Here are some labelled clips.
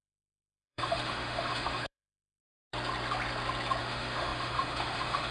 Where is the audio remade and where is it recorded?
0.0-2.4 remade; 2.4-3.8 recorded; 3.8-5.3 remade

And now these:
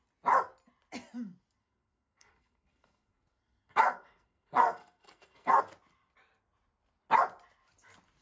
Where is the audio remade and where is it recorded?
0.0-1.6 recorded; 1.6-5.6 remade; 5.6-8.2 recorded

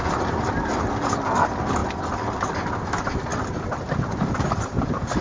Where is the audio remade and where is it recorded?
0.0-1.8 remade; 1.8-2.7 recorded; 2.7-5.2 remade

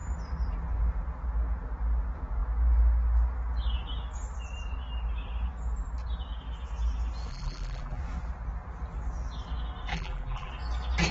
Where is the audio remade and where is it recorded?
0.0-7.3 recorded; 7.3-8.0 remade; 8.0-9.9 recorded; 9.9-10.5 remade; 10.5-11.1 recorded

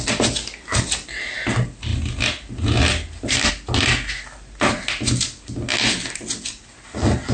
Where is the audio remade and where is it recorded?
0.0-7.3 recorded